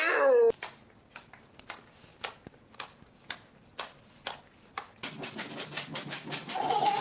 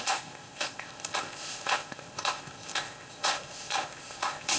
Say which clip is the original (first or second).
first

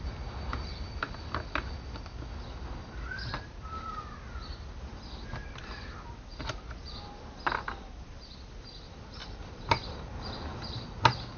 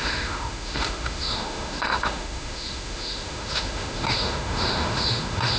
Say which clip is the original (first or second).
first